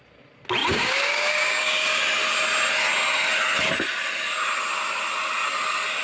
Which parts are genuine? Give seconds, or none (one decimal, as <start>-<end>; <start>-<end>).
0.0-0.6; 2.0-6.0